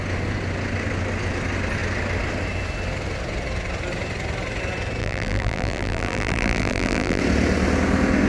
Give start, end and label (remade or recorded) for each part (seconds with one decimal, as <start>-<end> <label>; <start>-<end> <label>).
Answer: 0.0-5.0 recorded; 5.0-7.2 remade; 7.2-8.3 recorded